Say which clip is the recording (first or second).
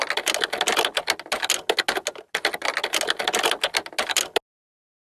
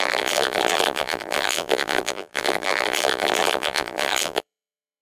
first